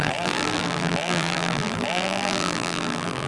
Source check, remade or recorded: remade